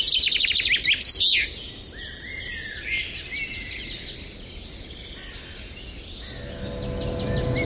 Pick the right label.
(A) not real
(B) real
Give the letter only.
B